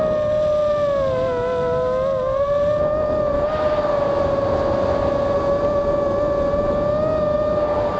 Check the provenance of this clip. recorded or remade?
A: recorded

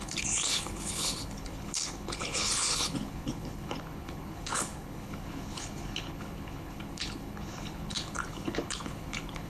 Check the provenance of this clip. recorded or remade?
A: remade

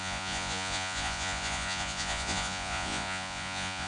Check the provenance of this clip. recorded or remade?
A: remade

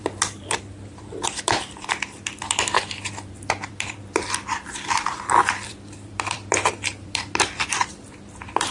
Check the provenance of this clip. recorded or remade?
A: remade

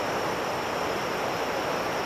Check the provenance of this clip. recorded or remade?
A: recorded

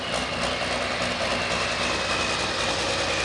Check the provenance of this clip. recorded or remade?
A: recorded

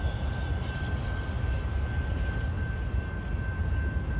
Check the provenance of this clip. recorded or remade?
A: recorded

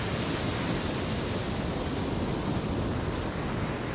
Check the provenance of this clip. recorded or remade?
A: recorded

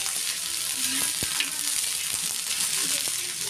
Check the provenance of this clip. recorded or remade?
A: remade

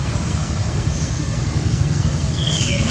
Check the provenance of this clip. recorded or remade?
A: remade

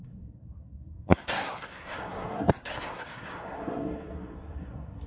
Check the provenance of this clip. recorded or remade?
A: remade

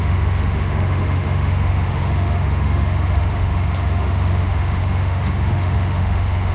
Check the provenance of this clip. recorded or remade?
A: remade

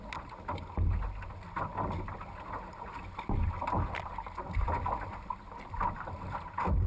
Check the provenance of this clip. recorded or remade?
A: recorded